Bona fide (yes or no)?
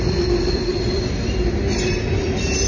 yes